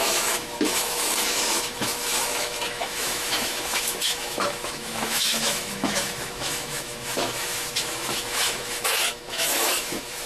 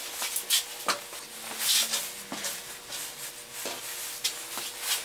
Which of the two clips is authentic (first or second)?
second